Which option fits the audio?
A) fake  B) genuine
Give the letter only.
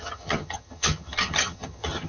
A